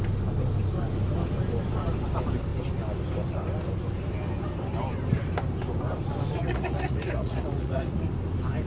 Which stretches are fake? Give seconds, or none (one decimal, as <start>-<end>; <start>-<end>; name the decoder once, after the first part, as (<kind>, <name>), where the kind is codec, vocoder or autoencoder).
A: 6.3-8.0 (vocoder, Vocos)